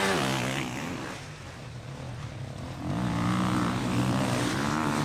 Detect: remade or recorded recorded